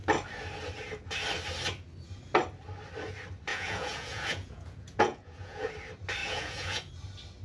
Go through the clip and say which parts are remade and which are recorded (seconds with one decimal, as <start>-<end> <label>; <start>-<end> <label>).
0.0-3.5 recorded; 3.5-5.7 remade; 5.7-6.2 recorded; 6.2-6.9 remade; 6.9-7.4 recorded